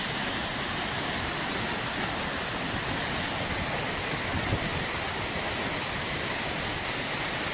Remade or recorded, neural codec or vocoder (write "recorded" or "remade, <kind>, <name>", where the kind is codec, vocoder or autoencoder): recorded